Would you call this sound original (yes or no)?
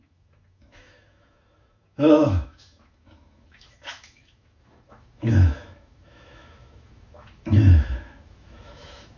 no